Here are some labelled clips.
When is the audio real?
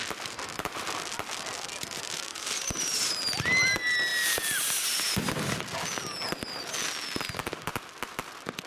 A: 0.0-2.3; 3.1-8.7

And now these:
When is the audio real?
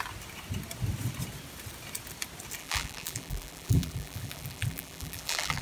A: 0.0-2.6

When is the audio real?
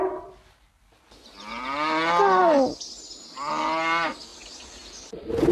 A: 0.0-5.5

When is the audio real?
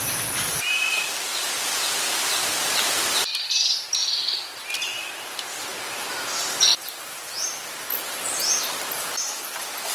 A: 6.7-7.9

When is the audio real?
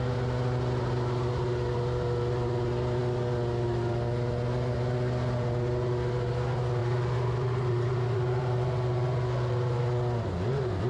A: 0.0-6.8; 9.8-10.9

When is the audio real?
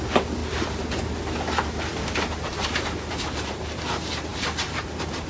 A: 0.0-2.5; 3.6-4.3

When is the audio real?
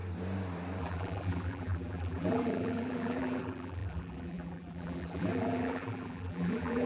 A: 0.0-0.8